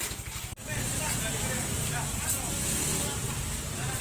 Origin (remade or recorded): recorded